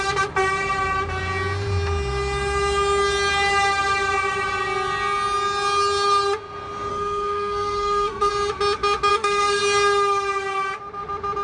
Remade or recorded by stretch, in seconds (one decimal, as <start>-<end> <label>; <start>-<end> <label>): 0.0-6.9 recorded; 6.9-8.3 remade; 8.3-9.1 recorded; 9.1-9.6 remade; 9.6-11.4 recorded